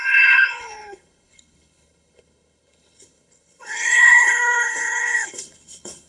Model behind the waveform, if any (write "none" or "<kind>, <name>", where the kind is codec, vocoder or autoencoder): codec, HILCodec